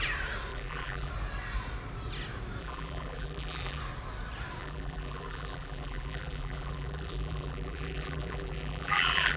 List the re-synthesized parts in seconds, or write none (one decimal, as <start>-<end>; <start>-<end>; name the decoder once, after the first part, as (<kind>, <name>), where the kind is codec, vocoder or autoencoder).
0.5-1.1 (vocoder, BigVGAN v2); 2.6-3.8; 4.6-9.4